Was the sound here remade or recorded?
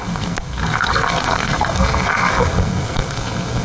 remade